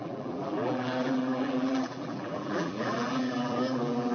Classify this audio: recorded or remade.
remade